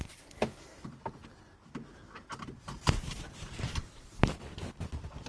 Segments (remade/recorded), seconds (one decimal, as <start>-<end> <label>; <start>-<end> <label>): 0.0-5.3 recorded